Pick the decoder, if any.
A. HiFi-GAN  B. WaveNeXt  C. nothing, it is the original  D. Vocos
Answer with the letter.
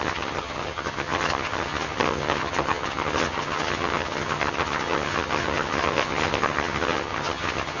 A